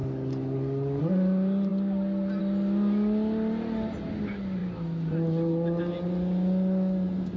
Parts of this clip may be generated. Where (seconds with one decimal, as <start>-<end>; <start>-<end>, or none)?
0.0-1.0